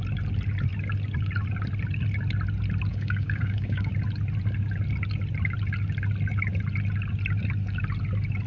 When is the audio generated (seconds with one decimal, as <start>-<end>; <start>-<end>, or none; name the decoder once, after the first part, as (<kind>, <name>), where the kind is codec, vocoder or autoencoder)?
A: 2.9-3.9 (codec, DAC)